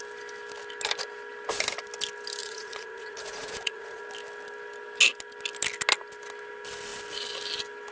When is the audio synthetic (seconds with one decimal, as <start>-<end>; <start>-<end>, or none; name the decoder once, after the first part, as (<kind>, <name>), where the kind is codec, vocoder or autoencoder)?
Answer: 2.4-4.0 (vocoder, Vocos)